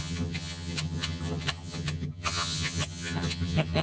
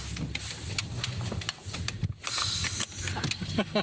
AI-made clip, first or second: first